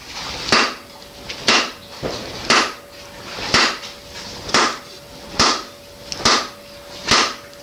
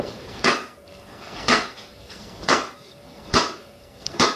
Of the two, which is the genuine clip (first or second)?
first